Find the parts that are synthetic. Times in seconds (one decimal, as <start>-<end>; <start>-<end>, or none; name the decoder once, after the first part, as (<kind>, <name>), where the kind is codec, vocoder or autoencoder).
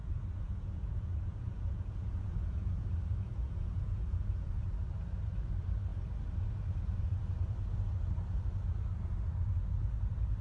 0.0-2.9 (vocoder, Vocos); 3.3-4.5